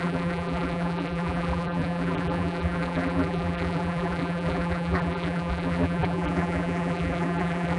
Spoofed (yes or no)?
yes